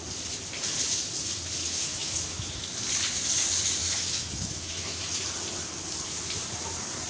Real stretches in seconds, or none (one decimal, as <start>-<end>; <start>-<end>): 0.0-1.6; 2.6-3.8; 5.2-7.1